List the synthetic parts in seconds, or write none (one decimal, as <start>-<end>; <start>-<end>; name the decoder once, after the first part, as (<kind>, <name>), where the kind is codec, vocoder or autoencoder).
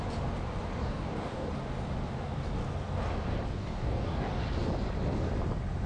0.8-1.5 (codec, DAC); 3.6-4.4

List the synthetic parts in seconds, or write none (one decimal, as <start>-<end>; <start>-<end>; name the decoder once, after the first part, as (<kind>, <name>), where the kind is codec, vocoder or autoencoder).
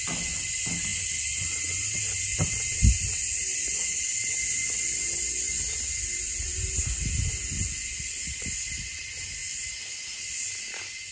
none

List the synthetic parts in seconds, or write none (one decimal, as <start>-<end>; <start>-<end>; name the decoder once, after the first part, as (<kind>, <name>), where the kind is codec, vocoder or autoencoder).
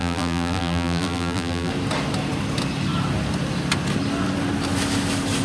0.0-1.7 (vocoder, BigVGAN v2)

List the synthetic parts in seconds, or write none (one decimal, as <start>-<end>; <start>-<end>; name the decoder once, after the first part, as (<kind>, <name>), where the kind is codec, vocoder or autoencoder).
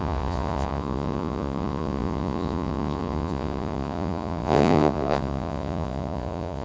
0.0-6.6 (vocoder, Vocos)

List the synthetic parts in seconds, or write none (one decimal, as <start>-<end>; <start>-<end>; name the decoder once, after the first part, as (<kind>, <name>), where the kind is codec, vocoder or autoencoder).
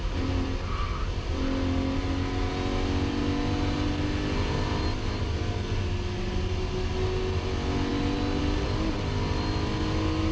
none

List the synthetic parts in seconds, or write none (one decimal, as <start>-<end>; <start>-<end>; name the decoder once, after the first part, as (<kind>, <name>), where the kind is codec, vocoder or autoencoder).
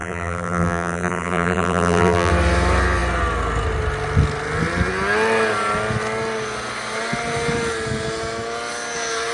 0.0-2.3 (vocoder, BigVGAN v2)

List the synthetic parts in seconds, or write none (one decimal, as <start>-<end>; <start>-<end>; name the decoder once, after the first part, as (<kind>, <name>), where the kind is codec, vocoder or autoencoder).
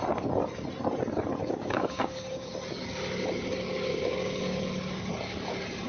1.4-2.5 (codec, DAC); 3.9-4.6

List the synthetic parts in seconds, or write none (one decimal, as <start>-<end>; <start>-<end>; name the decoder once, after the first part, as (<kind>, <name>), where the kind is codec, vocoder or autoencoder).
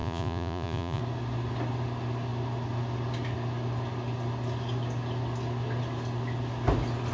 0.0-1.0 (vocoder, Vocos)